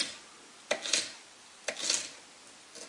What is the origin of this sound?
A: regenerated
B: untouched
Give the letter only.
B